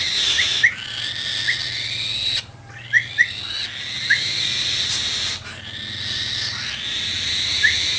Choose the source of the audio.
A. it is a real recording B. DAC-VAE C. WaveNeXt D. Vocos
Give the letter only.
A